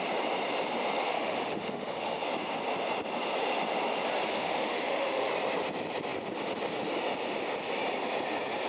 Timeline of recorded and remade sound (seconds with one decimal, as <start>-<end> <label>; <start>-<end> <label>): 0.0-1.1 recorded; 1.1-2.2 remade; 2.2-4.3 recorded; 4.3-5.3 remade; 5.3-8.7 recorded